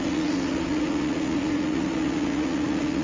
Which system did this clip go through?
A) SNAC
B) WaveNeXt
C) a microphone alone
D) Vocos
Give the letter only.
D